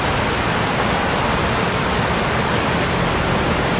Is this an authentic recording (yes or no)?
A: yes